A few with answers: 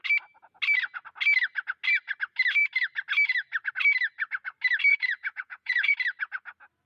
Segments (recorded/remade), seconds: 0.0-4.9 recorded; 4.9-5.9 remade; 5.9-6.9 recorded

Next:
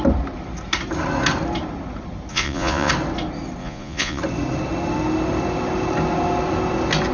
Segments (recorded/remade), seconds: 0.0-2.3 recorded; 2.3-2.9 remade; 2.9-3.6 recorded; 3.6-4.2 remade; 4.2-7.1 recorded

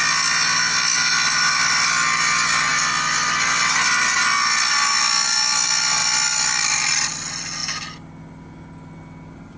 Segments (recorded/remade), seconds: 0.0-9.6 recorded

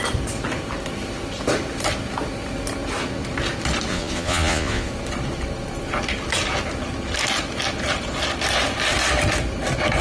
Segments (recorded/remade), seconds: 0.0-3.9 recorded; 3.9-4.9 remade; 4.9-10.0 recorded

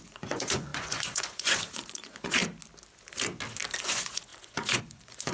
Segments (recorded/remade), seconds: 0.0-2.4 remade; 2.4-3.8 recorded; 3.8-5.3 remade

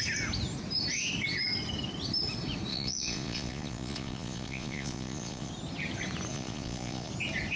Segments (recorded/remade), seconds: 0.0-2.7 recorded; 2.7-5.5 remade; 5.5-6.3 recorded; 6.3-7.1 remade; 7.1-7.6 recorded

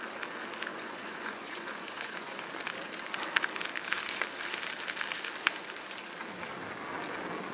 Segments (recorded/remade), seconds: 0.0-0.7 recorded; 0.7-2.4 remade; 2.4-7.5 recorded